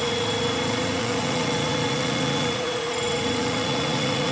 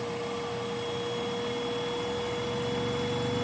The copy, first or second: first